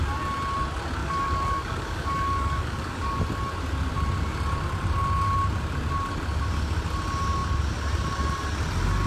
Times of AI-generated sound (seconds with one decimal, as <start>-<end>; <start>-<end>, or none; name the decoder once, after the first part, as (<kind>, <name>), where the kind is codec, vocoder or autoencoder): 1.0-3.2 (codec, DAC)